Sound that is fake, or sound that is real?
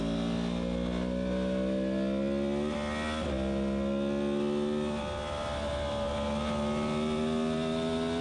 real